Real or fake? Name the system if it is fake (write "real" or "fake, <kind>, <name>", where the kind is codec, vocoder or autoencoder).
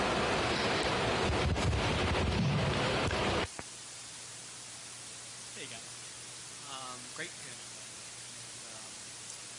real